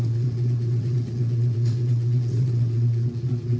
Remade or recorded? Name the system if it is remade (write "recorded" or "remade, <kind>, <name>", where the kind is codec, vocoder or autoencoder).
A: remade, vocoder, WaveNeXt